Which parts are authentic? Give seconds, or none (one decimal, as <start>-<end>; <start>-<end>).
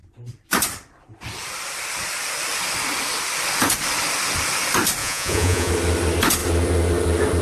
0.0-5.0; 5.7-7.4